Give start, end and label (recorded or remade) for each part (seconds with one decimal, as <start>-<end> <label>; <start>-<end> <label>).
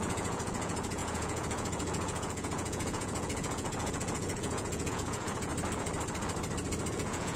0.0-5.5 remade; 5.5-6.9 recorded; 6.9-7.4 remade